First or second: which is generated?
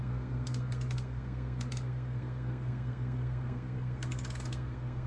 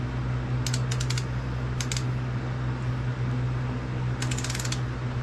first